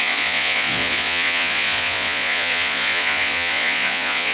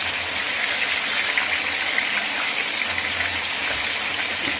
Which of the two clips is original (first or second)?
second